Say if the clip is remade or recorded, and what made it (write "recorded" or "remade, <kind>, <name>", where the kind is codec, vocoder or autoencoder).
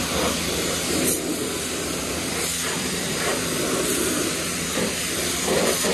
recorded